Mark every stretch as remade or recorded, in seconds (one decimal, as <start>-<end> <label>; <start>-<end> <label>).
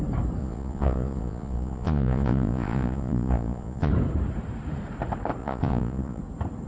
0.0-0.4 recorded; 0.4-3.9 remade; 3.9-5.4 recorded; 5.4-6.2 remade; 6.2-6.7 recorded